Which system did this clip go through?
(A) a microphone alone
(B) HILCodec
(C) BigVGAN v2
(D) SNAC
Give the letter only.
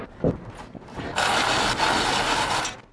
A